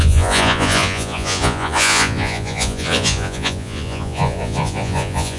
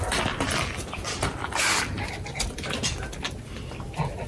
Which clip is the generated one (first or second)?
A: first